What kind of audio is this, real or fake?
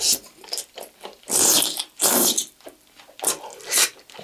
fake